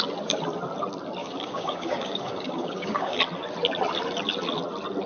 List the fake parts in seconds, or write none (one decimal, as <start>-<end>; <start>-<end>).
1.2-3.2